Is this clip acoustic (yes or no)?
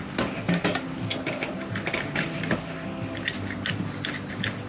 yes